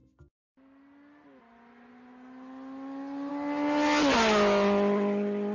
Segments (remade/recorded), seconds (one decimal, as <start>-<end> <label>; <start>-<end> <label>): 0.0-5.5 recorded